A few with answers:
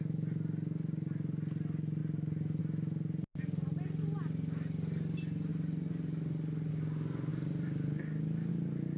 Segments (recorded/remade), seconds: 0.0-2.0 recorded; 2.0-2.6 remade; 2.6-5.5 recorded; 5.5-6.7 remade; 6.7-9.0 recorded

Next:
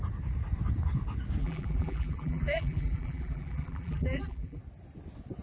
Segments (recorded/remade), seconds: 0.0-1.4 recorded; 1.4-4.6 remade; 4.6-5.4 recorded